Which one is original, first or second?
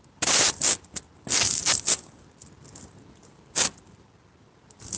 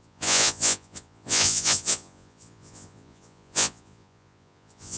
first